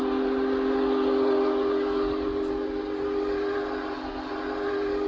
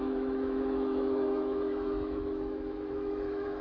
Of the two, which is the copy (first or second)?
second